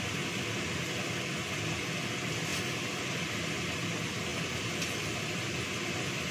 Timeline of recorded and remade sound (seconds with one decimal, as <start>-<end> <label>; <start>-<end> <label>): 0.0-4.3 recorded; 4.3-5.7 remade; 5.7-6.3 recorded